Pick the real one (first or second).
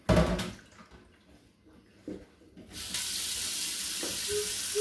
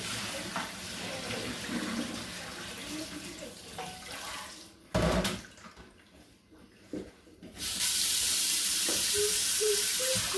first